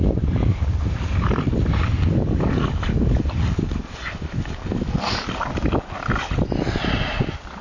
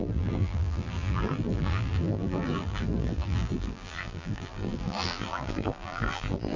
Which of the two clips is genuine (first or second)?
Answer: first